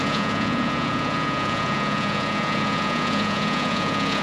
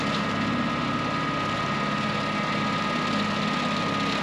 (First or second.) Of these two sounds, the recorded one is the second